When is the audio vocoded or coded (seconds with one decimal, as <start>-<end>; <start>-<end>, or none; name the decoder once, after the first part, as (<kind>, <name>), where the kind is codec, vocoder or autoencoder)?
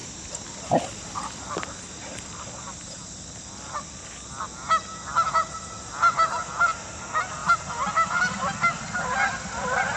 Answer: none